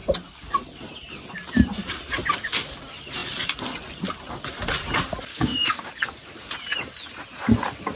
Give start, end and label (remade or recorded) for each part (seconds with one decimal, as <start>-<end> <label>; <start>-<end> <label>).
0.0-5.3 recorded; 5.3-5.9 remade; 5.9-8.0 recorded